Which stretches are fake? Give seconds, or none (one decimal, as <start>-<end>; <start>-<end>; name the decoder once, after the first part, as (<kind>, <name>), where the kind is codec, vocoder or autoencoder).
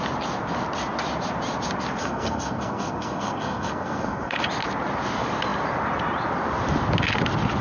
2.0-4.4 (codec, SNAC)